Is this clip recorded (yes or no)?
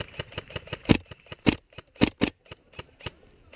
no